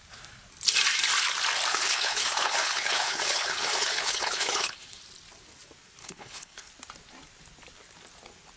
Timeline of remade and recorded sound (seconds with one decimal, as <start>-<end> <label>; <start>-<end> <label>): 0.0-1.7 recorded; 1.7-5.0 remade; 5.0-6.0 recorded; 6.0-6.7 remade; 6.7-8.6 recorded